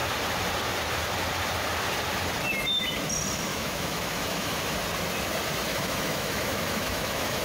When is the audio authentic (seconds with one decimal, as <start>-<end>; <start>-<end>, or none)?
0.0-3.5; 4.6-5.7